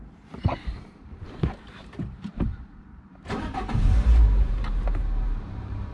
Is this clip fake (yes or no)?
yes